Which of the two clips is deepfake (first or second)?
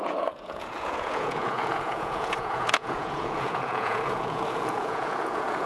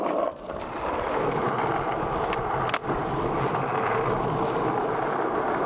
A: first